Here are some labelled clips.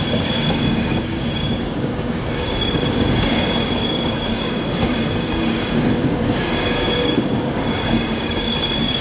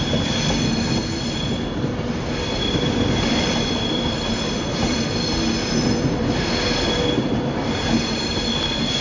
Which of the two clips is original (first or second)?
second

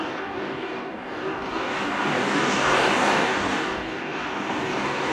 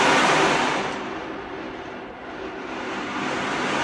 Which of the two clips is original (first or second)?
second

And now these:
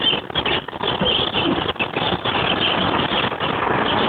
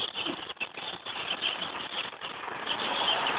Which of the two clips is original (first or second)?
first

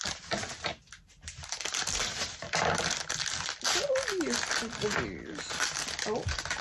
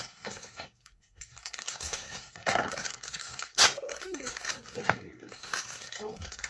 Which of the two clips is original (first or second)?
first